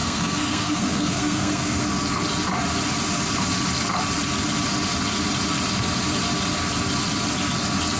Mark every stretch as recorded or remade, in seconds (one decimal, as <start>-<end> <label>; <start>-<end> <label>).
0.0-1.8 remade; 1.8-8.0 recorded